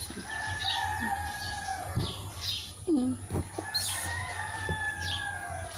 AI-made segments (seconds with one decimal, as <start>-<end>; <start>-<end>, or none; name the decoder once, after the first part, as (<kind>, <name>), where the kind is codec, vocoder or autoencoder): none